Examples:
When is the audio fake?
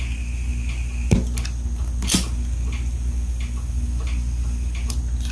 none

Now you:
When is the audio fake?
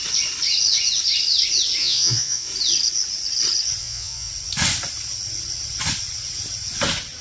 1.8-2.5 (vocoder, Vocos); 3.8-4.3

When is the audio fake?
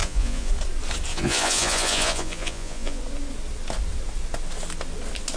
0.0-0.5 (vocoder, Vocos); 1.1-3.0